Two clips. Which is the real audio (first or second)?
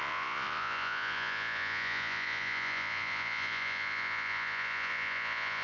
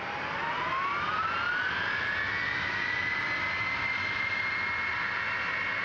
second